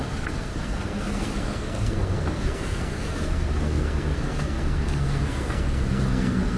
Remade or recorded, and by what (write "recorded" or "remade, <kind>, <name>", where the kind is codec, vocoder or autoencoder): remade, codec, SNAC